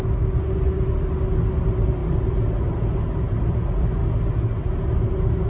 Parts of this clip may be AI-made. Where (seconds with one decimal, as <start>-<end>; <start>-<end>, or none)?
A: none